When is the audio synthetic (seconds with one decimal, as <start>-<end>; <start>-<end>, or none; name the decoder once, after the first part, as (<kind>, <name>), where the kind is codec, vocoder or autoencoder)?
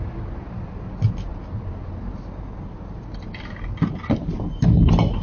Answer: none